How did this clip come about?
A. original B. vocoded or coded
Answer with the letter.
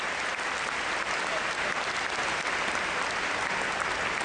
A